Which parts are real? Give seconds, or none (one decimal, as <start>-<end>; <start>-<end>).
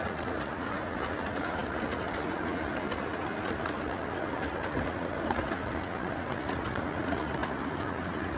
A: none